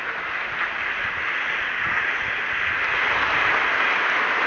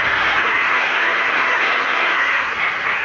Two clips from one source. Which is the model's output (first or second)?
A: second